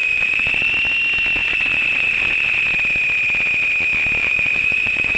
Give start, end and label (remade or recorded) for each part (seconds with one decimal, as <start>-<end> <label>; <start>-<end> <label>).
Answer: 0.0-0.7 remade; 0.7-1.4 recorded; 1.4-2.6 remade; 2.6-4.2 recorded; 4.2-5.2 remade